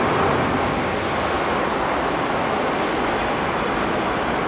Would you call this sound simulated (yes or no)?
no